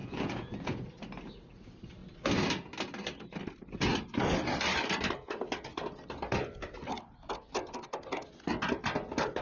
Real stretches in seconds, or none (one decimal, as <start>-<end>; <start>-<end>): 0.9-9.4